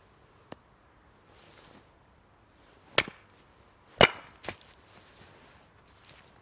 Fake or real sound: real